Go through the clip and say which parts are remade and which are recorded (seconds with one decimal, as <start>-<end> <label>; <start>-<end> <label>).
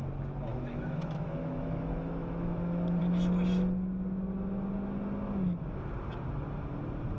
0.0-0.5 recorded; 0.5-3.0 remade; 3.0-7.2 recorded